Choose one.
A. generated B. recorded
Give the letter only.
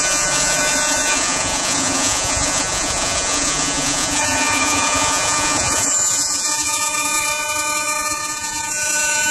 A